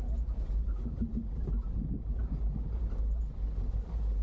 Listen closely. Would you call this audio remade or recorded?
recorded